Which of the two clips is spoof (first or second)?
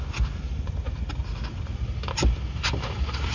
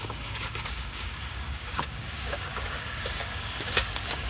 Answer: second